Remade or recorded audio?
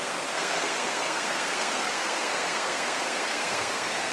remade